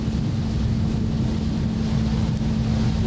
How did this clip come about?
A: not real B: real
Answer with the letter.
B